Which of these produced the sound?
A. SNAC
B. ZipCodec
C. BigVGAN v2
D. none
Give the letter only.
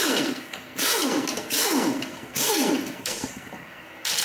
A